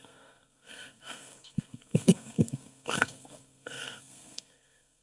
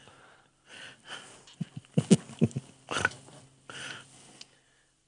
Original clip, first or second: second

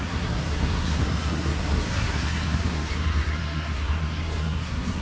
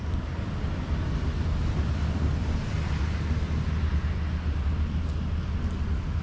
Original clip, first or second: second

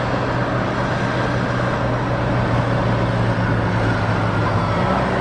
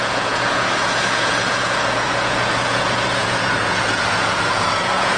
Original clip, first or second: first